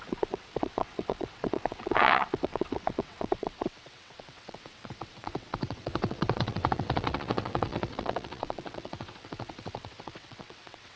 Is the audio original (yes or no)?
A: no